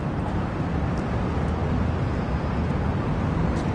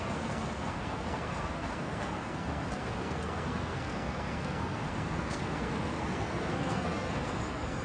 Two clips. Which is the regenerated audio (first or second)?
second